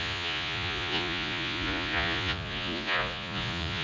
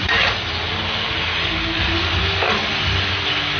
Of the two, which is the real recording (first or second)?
second